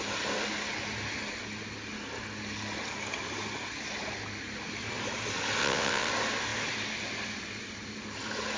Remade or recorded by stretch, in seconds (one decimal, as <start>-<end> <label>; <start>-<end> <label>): 0.0-5.6 recorded; 5.6-6.1 remade; 6.1-8.6 recorded